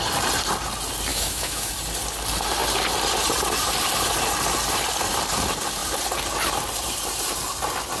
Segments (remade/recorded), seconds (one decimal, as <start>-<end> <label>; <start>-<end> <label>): 0.0-1.1 recorded; 1.1-1.7 remade; 1.7-8.0 recorded